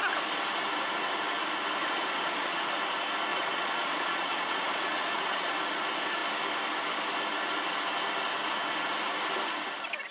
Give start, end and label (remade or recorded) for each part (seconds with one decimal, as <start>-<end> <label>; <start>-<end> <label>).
0.0-1.8 recorded; 1.8-2.6 remade; 2.6-3.3 recorded; 3.3-5.5 remade; 5.5-10.1 recorded